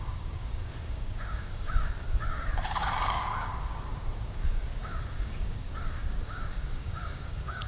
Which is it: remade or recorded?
remade